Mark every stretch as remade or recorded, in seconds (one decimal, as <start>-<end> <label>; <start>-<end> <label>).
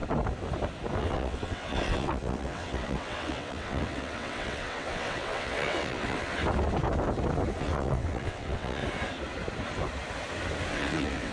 0.0-1.0 recorded; 1.0-6.4 remade; 6.4-7.6 recorded; 7.6-8.8 remade; 8.8-10.7 recorded; 10.7-11.3 remade